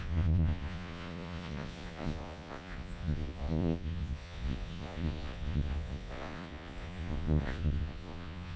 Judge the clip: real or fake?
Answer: fake